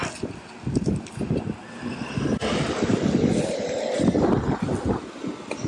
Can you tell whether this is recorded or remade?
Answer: recorded